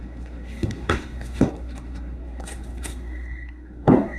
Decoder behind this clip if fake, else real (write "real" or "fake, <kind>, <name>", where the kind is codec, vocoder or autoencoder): fake, codec, SNAC